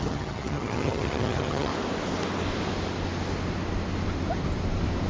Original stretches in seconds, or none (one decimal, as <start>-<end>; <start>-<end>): 1.7-5.1